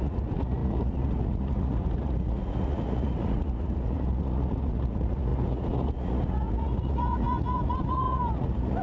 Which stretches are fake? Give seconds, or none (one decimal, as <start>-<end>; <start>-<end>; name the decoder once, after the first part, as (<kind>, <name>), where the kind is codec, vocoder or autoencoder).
0.0-8.8 (vocoder, Vocos)